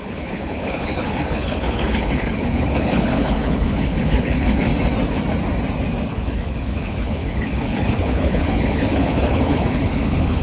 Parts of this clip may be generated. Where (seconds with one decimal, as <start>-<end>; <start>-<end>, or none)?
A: 0.0-4.7; 6.1-10.4